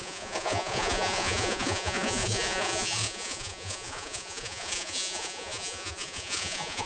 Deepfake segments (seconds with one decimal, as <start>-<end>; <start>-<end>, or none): 0.0-6.9